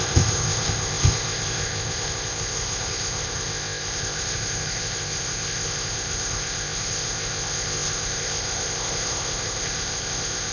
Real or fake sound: fake